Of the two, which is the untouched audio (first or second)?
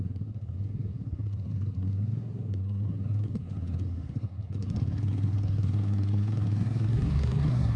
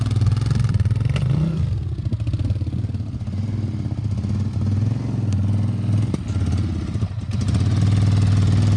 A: second